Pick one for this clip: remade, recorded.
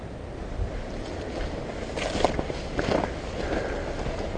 recorded